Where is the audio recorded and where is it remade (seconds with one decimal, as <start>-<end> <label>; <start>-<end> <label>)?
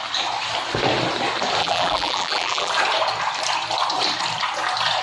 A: 0.0-1.6 recorded; 1.6-2.7 remade; 2.7-5.0 recorded